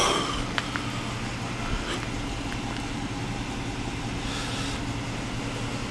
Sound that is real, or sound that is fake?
real